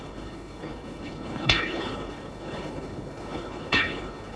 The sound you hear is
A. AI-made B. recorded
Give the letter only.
A